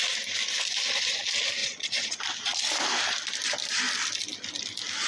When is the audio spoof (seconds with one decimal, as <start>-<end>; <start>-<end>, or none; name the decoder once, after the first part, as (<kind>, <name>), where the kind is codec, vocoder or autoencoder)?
1.6-2.2 (vocoder, Vocos)